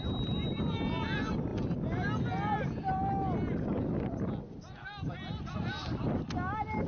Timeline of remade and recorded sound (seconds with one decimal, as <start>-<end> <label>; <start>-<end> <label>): 0.0-6.9 recorded